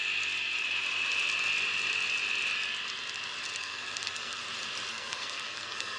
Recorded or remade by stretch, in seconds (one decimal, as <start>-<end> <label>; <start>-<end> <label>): 0.0-3.6 recorded; 3.6-4.4 remade; 4.4-4.9 recorded; 4.9-6.0 remade